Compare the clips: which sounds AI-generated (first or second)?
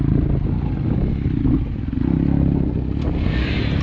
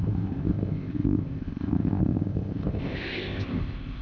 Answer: second